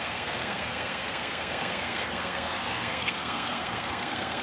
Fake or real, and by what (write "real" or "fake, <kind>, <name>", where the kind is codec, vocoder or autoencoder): fake, codec, SNAC